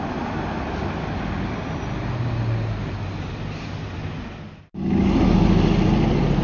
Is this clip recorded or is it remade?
recorded